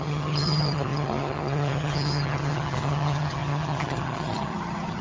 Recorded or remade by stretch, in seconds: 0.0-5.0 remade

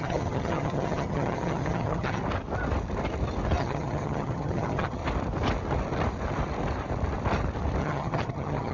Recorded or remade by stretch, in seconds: 0.0-2.2 remade; 2.2-3.6 recorded; 3.6-5.0 remade; 5.0-7.8 recorded; 7.8-8.7 remade

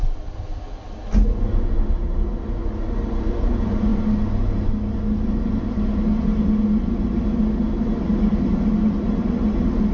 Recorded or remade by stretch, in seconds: 0.0-9.9 recorded

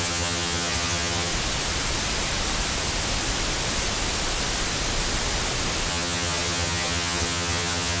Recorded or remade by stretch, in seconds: 0.0-1.3 remade; 1.3-5.9 recorded; 5.9-8.0 remade

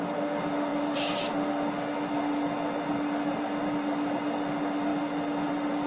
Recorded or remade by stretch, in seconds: 0.0-5.9 recorded

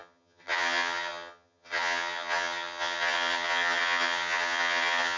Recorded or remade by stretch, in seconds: 0.0-5.2 remade

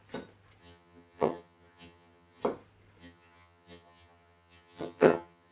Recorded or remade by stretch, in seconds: 0.0-0.6 recorded; 0.6-2.4 remade; 2.4-3.0 recorded; 3.0-5.5 remade

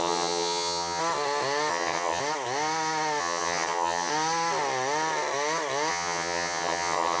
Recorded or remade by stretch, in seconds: 0.0-1.0 remade; 1.0-1.7 recorded; 1.7-2.2 remade; 2.2-3.2 recorded; 3.2-4.1 remade; 4.1-5.9 recorded; 5.9-7.2 remade